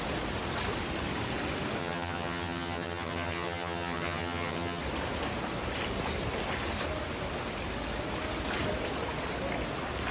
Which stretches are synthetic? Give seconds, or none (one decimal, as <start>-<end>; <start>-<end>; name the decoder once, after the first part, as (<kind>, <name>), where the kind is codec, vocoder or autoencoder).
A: 1.8-4.8 (vocoder, HiFi-GAN)